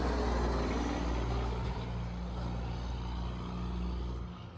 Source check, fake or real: real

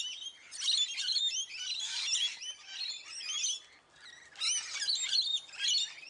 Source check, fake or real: real